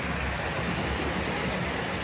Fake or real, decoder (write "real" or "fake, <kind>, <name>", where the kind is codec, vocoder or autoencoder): real